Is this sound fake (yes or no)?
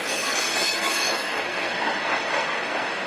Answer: yes